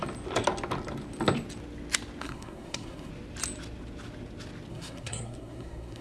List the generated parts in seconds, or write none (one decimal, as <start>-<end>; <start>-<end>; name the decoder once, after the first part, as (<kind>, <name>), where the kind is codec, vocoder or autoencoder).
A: 2.2-3.1 (codec, SNAC); 4.7-6.0